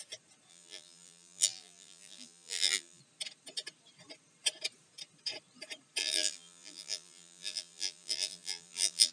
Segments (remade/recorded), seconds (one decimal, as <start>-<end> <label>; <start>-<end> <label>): 0.0-0.5 recorded; 0.5-3.0 remade; 3.0-6.0 recorded; 6.0-9.1 remade